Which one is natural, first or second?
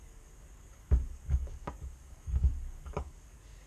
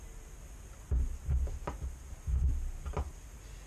second